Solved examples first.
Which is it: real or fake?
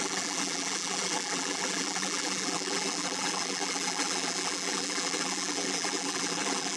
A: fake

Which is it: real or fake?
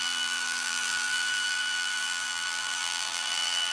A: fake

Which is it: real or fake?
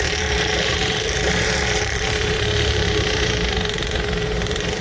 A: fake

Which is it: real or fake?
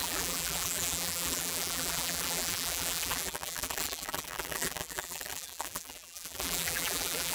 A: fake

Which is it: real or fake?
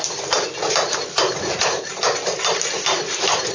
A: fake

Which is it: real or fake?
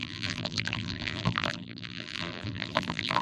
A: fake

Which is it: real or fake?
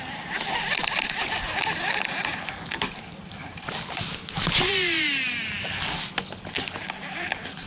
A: real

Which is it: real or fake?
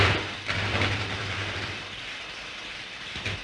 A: fake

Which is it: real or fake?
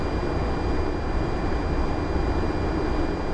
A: real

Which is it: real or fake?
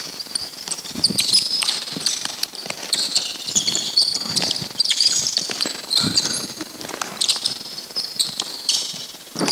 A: fake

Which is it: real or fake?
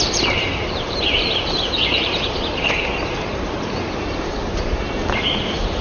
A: fake